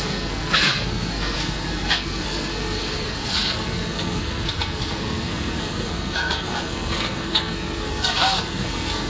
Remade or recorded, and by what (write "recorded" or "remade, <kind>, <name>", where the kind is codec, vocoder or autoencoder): remade, codec, SNAC